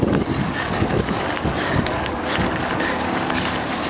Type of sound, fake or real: fake